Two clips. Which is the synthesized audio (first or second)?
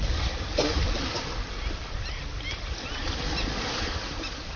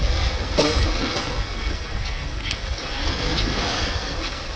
second